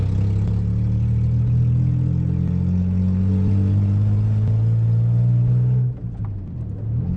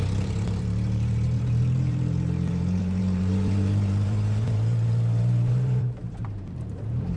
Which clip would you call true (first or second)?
first